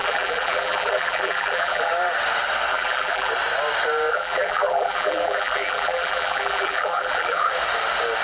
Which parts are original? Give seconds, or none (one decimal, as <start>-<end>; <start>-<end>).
1.9-2.7; 3.3-4.1; 7.5-8.2